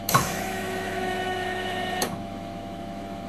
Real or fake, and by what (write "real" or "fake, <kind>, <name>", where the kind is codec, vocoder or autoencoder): fake, autoencoder, DAC-VAE